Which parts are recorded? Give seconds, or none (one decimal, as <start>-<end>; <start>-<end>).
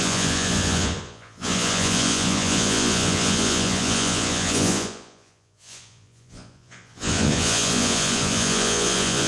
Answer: none